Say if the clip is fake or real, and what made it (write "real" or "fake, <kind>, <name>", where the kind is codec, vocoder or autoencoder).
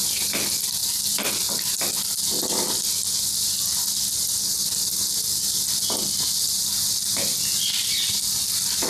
real